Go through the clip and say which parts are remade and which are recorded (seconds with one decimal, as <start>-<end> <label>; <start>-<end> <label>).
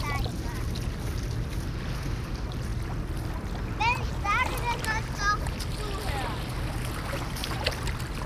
0.0-8.3 recorded